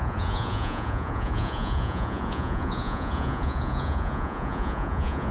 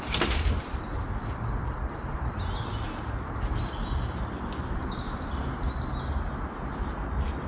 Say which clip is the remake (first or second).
first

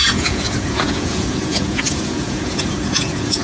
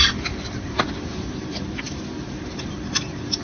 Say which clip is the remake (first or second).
first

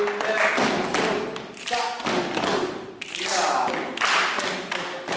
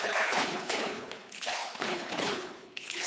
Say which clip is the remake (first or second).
second